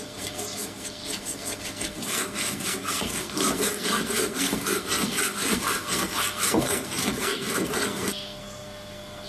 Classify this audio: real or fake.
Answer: fake